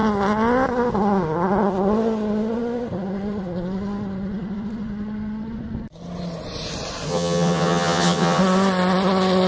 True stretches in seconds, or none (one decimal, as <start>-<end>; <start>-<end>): 0.0-7.1; 8.4-9.5